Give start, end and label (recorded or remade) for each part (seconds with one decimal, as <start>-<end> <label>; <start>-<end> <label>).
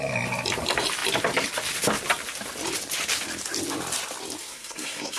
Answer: 0.0-4.4 recorded; 4.4-5.2 remade